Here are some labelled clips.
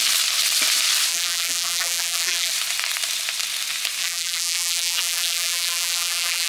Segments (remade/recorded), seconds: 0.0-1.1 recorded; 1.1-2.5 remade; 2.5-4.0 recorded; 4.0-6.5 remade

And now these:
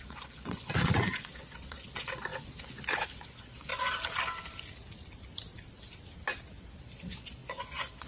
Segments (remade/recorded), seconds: 0.0-3.7 remade; 3.7-6.8 recorded; 6.8-8.1 remade

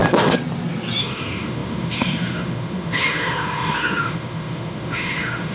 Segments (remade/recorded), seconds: 0.0-1.0 recorded; 1.0-5.5 remade

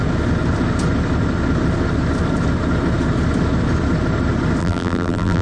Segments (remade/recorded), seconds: 0.0-4.6 recorded; 4.6-5.4 remade

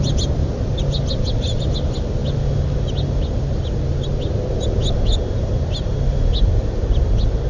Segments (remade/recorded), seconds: 0.0-7.5 recorded